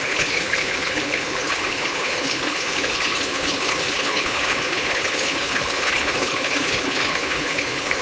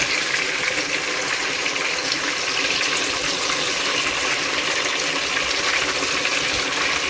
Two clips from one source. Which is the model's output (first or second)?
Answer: first